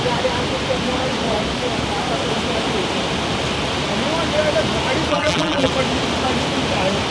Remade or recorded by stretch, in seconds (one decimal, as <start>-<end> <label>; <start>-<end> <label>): 0.0-5.1 recorded; 5.1-5.7 remade; 5.7-7.1 recorded